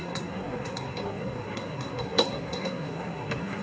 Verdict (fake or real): fake